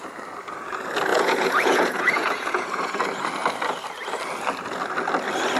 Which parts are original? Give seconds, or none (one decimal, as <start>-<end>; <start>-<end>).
0.0-1.1; 3.0-5.6